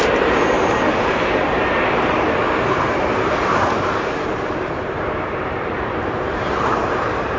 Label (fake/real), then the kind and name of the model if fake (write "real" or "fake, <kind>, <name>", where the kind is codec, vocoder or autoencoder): fake, vocoder, BigVGAN v2